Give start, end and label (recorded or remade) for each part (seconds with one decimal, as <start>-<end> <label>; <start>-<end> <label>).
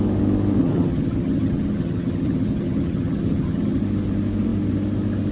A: 0.0-0.6 recorded; 0.6-3.8 remade; 3.8-5.3 recorded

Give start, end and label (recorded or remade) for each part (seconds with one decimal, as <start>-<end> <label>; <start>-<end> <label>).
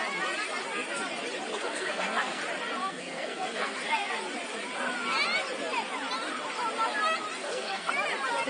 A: 0.0-1.5 recorded; 1.5-2.4 remade; 2.4-2.8 recorded; 2.8-4.1 remade; 4.1-7.4 recorded; 7.4-7.9 remade; 7.9-8.5 recorded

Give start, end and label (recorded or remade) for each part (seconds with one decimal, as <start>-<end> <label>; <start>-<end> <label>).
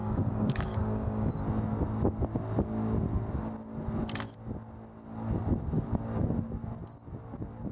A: 0.0-1.3 remade; 1.3-7.7 recorded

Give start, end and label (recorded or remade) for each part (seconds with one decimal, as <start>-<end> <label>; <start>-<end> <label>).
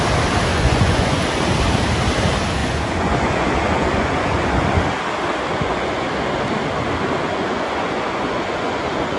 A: 0.0-0.5 recorded; 0.5-1.2 remade; 1.2-2.6 recorded; 2.6-4.8 remade; 4.8-5.5 recorded; 5.5-6.1 remade; 6.1-7.3 recorded; 7.3-9.2 remade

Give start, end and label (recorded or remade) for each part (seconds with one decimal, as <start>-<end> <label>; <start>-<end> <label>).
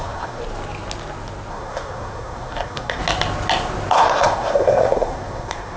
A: 0.0-0.4 remade; 0.4-1.5 recorded; 1.5-3.0 remade; 3.0-3.9 recorded; 3.9-5.8 remade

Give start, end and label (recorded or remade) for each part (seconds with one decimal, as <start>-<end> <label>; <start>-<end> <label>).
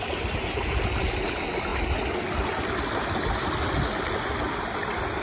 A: 0.0-5.2 recorded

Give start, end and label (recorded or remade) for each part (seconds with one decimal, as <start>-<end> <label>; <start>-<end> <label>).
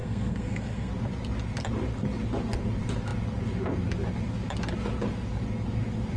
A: 0.0-0.9 remade; 0.9-6.2 recorded